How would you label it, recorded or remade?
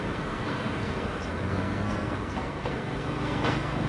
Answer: remade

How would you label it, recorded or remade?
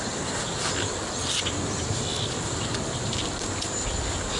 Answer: recorded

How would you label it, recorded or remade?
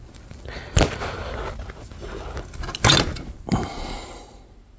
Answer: recorded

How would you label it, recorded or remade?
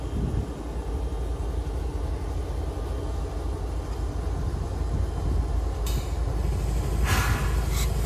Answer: recorded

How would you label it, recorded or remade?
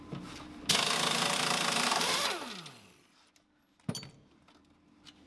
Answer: recorded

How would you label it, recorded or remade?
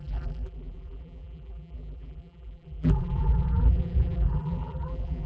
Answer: remade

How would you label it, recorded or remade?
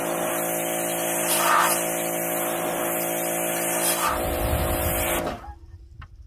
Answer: recorded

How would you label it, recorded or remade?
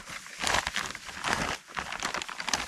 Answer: recorded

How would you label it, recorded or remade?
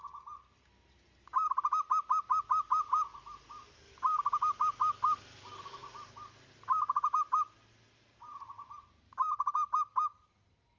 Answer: recorded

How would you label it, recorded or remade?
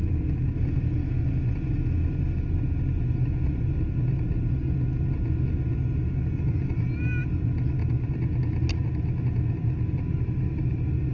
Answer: recorded